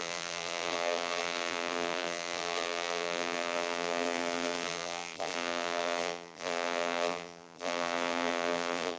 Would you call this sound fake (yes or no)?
yes